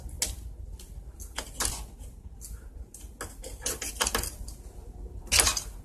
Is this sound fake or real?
real